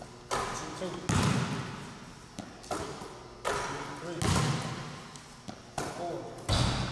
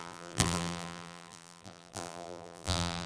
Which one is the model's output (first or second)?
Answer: second